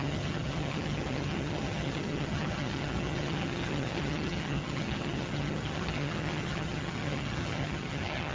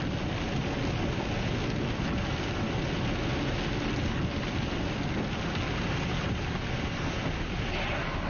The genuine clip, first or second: second